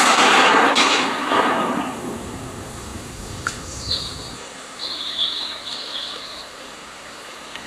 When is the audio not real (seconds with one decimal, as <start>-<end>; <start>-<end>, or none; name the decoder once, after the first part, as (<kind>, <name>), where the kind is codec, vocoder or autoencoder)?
0.0-7.7 (codec, SNAC)